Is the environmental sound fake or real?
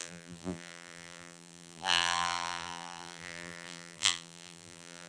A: fake